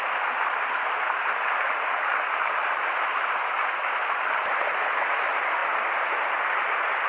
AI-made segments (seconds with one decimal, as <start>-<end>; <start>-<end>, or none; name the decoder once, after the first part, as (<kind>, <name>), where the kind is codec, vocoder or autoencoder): none